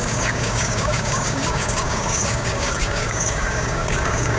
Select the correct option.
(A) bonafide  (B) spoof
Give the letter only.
B